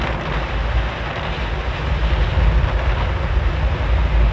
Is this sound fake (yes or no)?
no